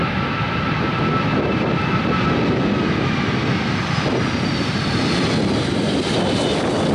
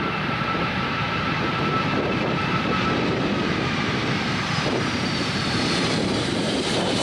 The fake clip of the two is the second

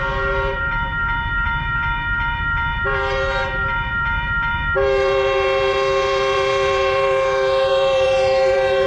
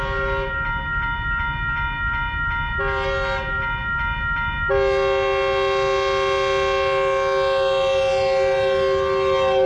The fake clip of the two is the first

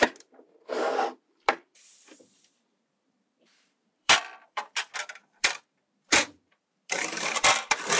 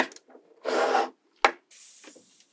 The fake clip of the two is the first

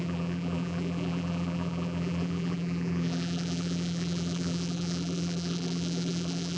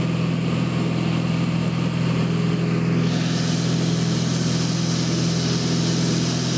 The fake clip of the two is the first